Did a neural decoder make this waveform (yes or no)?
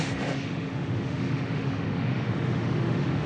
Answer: yes